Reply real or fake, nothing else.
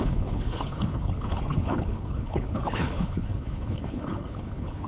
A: fake